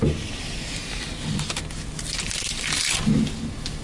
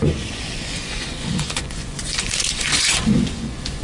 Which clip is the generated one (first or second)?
second